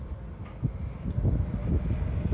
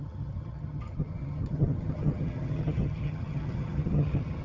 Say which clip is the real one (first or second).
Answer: first